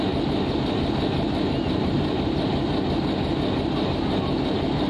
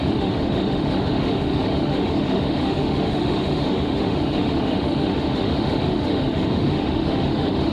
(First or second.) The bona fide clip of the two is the first